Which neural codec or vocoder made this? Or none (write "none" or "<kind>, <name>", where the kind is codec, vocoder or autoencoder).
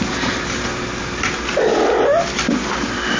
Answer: none